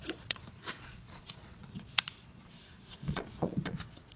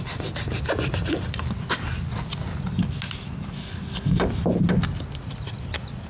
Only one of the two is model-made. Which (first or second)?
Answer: first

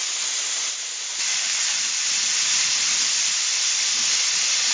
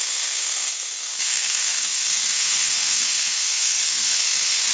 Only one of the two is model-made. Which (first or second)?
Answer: second